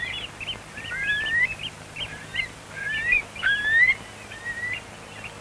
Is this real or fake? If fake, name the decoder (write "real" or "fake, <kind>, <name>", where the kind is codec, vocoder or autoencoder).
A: real